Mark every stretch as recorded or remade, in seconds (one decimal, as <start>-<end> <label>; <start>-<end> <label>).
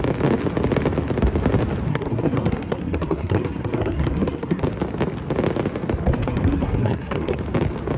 0.0-1.9 recorded; 1.9-4.6 remade; 4.6-6.0 recorded; 6.0-7.4 remade; 7.4-8.0 recorded